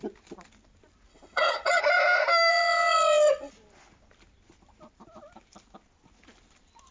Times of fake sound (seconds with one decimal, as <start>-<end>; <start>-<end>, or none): 1.1-1.8; 2.5-3.5